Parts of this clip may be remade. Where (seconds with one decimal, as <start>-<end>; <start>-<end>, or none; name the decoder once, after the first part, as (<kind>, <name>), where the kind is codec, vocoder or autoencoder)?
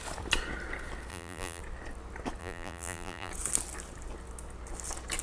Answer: 1.1-1.6 (vocoder, BigVGAN v2); 2.4-3.3